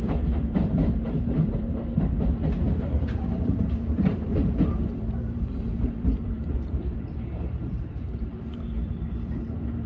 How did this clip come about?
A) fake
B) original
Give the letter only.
A